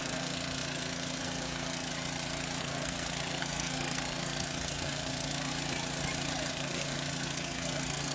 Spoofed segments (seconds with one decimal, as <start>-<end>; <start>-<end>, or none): 0.0-1.9; 2.6-5.5; 6.5-8.1